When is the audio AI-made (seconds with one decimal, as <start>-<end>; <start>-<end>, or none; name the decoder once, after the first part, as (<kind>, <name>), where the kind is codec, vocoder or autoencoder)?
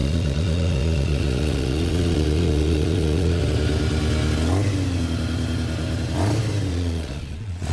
0.0-3.4 (vocoder, Vocos); 6.7-7.7